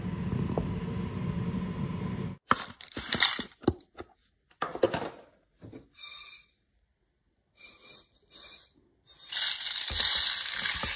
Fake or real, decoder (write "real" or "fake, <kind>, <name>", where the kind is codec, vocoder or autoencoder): real